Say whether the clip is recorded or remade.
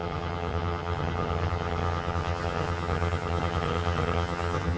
remade